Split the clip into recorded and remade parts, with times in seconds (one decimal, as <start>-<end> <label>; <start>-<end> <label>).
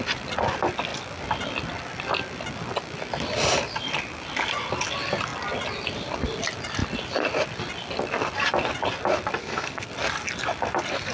0.0-9.4 recorded; 9.4-9.9 remade; 9.9-11.1 recorded